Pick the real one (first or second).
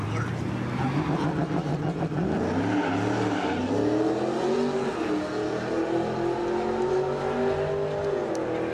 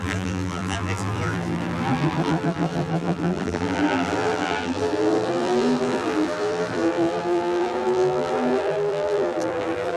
first